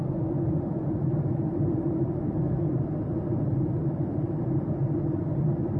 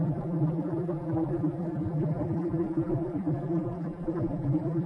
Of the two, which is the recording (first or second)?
first